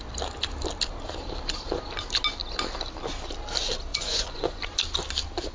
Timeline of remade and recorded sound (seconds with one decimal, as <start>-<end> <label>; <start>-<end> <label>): 0.0-3.9 recorded; 3.9-4.6 remade; 4.6-5.5 recorded